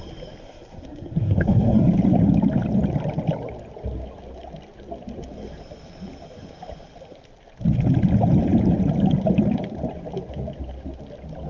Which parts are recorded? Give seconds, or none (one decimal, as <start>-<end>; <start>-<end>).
0.0-0.4; 1.9-11.5